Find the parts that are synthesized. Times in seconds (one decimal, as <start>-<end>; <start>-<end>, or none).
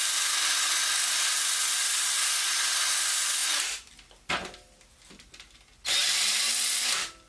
none